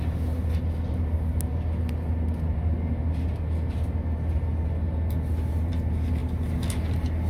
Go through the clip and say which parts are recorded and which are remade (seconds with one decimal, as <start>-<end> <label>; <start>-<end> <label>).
0.0-7.3 recorded